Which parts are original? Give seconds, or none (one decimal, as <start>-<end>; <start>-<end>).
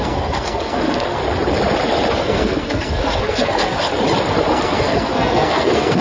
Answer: 1.2-2.2; 3.9-4.5